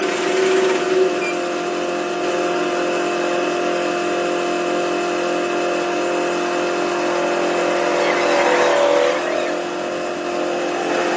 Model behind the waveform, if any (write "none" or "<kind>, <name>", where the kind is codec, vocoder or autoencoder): none